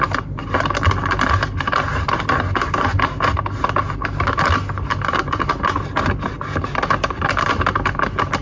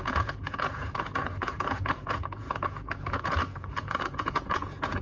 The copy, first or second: second